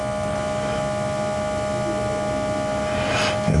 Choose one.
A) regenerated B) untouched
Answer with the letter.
B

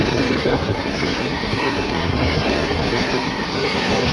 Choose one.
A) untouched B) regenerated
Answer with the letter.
B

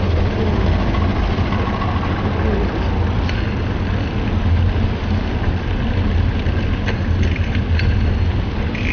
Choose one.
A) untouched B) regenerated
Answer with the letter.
A